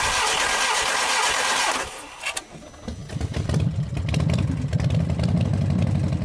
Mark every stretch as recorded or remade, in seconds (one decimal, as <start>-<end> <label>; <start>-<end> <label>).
0.0-6.2 recorded